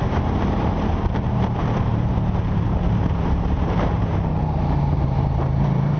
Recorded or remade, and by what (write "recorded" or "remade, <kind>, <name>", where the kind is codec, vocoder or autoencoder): remade, vocoder, BigVGAN v2